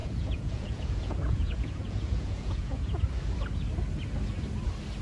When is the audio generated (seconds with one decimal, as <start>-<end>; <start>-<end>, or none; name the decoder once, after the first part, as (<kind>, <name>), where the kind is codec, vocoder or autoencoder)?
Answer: 0.0-3.0 (vocoder, Vocos)